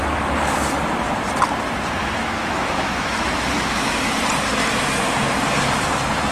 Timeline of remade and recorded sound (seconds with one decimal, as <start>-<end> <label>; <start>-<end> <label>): 0.0-2.0 recorded; 2.0-4.2 remade; 4.2-6.3 recorded